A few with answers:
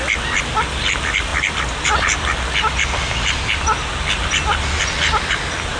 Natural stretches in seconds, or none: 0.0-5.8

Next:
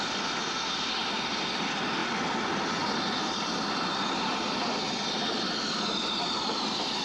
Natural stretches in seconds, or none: 0.0-7.0